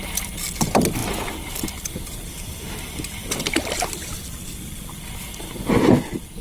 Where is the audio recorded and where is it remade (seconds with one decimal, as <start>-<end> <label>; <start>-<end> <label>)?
0.0-6.4 recorded